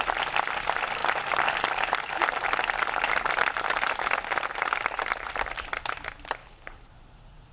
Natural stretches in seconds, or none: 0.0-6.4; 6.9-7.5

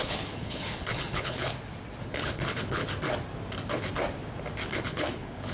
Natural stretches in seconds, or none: 1.5-2.0; 2.8-4.7

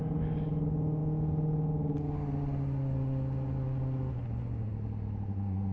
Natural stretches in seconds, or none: 0.0-5.7

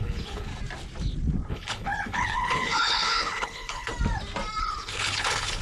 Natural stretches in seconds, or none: 0.5-1.5; 3.9-4.6

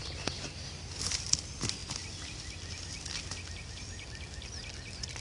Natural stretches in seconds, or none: 0.0-5.2